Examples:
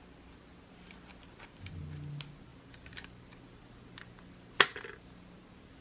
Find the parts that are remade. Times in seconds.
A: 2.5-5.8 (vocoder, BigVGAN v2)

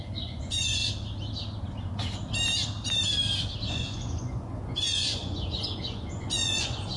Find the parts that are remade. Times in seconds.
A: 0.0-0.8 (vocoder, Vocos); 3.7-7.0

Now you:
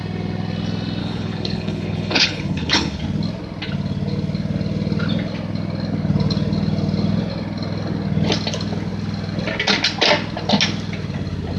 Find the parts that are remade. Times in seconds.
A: 1.0-3.0 (codec, HILCodec)

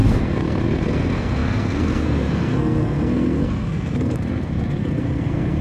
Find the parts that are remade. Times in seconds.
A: 0.0-5.6 (codec, SNAC)